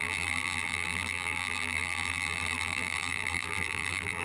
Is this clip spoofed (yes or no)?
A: yes